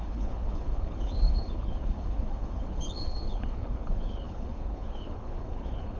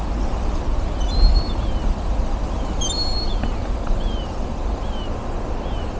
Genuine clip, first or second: second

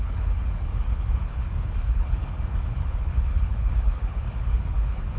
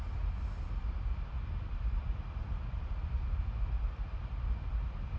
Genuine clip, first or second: second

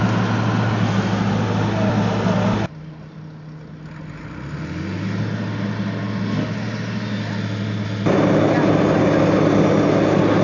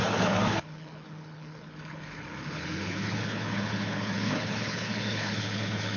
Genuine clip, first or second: first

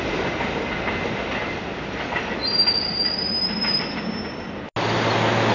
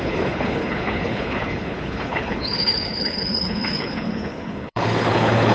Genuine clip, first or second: first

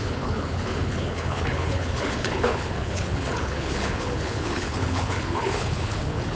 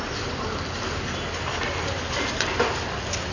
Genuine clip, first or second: second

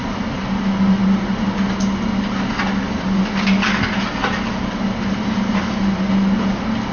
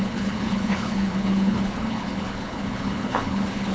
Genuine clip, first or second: first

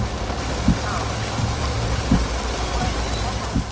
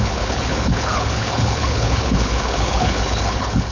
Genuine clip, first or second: first